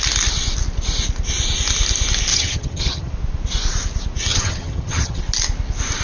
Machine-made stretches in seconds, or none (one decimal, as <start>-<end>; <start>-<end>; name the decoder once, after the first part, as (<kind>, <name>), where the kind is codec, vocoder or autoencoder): 2.3-3.1 (vocoder, HiFi-GAN); 4.3-5.2